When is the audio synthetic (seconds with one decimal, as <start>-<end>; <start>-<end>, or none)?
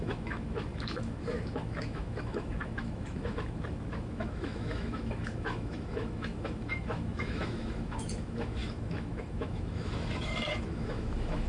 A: 0.0-11.5